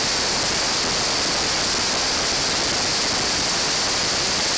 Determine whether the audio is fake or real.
real